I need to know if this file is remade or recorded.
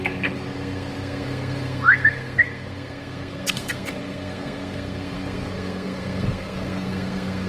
remade